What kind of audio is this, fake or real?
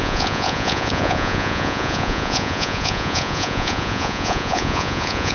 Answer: fake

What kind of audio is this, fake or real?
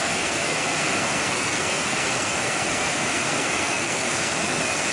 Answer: fake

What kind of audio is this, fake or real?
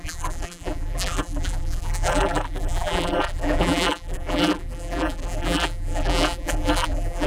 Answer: fake